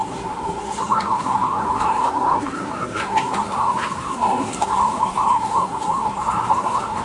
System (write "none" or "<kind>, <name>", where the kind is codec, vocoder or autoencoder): codec, SNAC